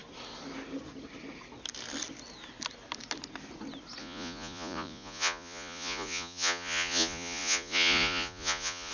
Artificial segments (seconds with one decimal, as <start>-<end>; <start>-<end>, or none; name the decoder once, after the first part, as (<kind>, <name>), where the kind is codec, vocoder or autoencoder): 4.0-8.9 (vocoder, Vocos)